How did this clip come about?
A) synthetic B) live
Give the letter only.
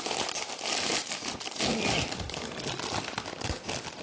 B